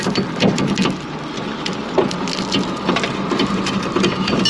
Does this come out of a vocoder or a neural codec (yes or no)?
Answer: no